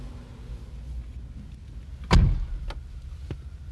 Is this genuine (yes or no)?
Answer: yes